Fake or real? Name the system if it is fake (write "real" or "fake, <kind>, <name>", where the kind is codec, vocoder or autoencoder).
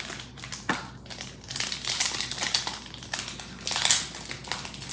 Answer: real